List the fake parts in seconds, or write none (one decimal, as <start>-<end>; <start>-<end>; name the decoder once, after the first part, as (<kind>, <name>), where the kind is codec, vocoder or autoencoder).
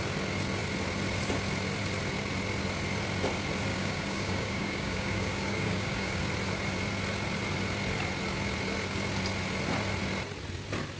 3.7-6.2 (codec, DAC)